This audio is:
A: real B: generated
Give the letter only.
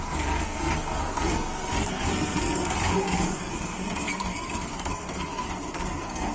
B